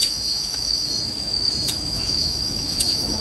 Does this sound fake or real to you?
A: fake